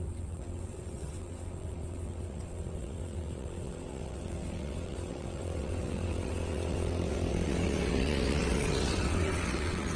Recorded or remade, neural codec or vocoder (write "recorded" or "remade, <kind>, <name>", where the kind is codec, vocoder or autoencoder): remade, vocoder, WaveNeXt